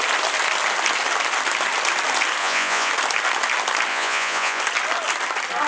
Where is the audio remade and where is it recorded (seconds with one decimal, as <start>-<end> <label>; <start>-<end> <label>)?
0.0-2.4 recorded; 2.4-2.9 remade; 2.9-3.9 recorded; 3.9-4.6 remade; 4.6-5.7 recorded